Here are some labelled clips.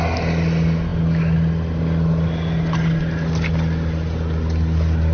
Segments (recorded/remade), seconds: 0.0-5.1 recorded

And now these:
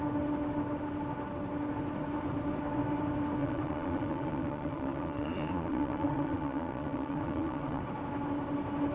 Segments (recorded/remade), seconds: 0.0-3.4 recorded; 3.4-7.8 remade; 7.8-8.9 recorded